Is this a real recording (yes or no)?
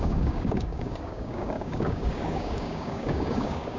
no